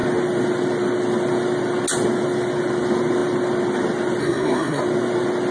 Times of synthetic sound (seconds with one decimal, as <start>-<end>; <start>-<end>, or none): 4.2-4.8